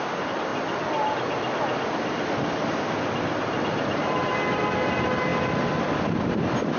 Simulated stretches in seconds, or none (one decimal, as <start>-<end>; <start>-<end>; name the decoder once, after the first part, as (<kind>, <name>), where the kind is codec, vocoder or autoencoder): none